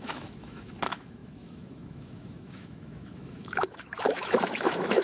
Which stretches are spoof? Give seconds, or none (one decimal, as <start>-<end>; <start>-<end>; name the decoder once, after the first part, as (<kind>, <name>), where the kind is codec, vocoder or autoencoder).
0.0-5.0 (autoencoder, DAC-VAE)